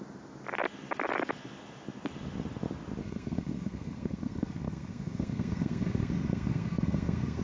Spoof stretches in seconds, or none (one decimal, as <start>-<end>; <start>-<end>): 3.0-7.4